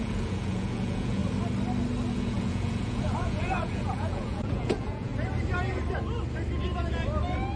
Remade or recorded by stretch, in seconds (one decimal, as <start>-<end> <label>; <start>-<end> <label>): 0.0-1.2 remade; 1.2-2.1 recorded; 2.1-5.1 remade; 5.1-7.6 recorded